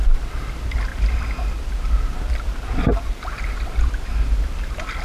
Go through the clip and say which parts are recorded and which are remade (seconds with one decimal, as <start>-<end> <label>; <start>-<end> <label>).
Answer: 0.0-5.0 recorded